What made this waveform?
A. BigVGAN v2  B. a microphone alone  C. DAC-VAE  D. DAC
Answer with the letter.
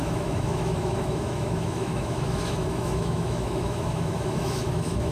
C